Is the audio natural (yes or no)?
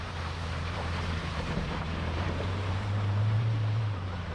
no